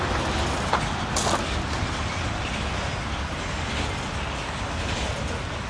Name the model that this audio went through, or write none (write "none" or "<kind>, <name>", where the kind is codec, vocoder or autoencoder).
none